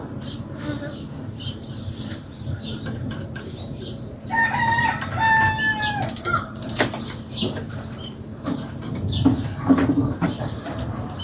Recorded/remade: remade